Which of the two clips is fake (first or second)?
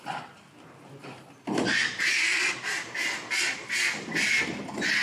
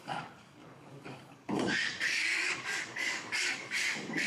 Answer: second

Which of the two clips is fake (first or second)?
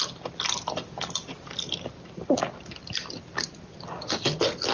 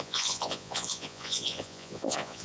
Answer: second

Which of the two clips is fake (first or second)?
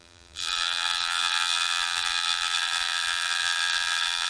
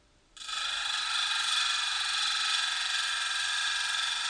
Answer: first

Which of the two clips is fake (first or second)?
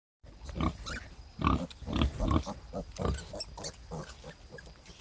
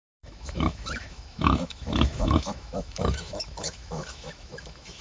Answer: second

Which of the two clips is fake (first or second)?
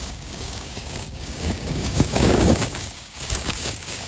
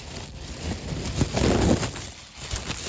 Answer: first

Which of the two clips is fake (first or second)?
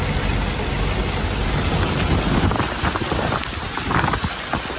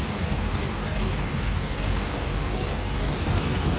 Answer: second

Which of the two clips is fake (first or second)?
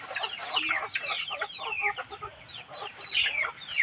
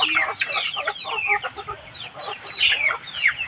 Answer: first